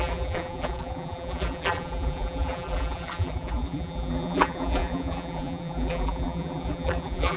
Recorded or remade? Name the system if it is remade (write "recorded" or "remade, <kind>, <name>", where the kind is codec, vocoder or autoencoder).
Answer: remade, vocoder, BigVGAN v2